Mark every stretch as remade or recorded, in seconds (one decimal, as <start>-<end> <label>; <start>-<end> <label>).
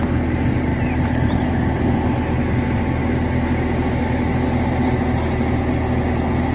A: 0.0-6.5 recorded